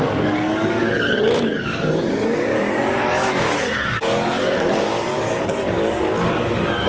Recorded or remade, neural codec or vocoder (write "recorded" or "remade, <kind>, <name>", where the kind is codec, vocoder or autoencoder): remade, codec, DAC